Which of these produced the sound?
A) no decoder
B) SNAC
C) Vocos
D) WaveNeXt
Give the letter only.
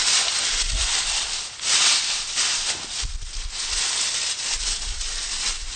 A